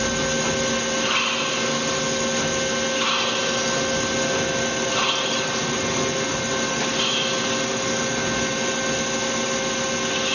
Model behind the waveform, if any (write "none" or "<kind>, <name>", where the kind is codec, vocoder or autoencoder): none